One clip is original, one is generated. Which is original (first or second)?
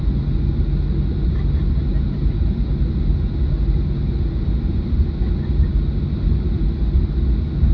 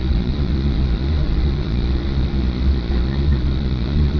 first